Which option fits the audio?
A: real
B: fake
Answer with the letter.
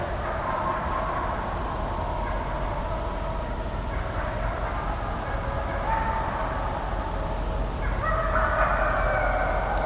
A